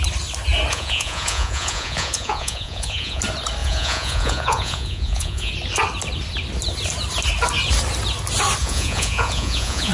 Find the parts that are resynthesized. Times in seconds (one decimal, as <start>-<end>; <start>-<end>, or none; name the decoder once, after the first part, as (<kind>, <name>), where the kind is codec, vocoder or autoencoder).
0.7-3.2 (vocoder, Vocos); 3.6-5.5; 8.6-9.9